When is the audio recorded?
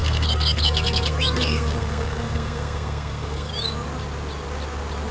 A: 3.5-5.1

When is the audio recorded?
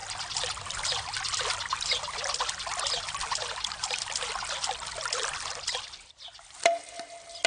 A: 0.0-7.5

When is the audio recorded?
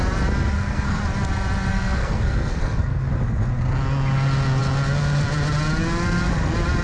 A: 0.0-0.5; 1.0-1.7; 3.1-6.8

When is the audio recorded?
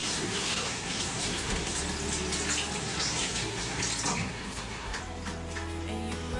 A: 1.8-2.8; 3.8-4.2; 5.0-6.4